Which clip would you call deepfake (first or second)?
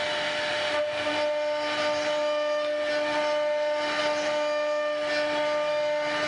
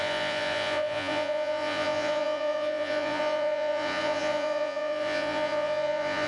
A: second